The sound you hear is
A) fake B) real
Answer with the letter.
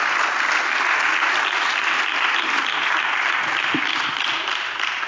B